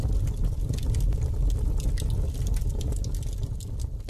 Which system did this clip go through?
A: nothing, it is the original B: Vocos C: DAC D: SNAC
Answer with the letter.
A